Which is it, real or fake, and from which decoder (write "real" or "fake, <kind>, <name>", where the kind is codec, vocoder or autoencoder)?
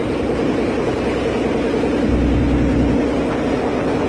real